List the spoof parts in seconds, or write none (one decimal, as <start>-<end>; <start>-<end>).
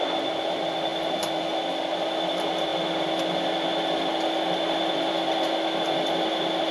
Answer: none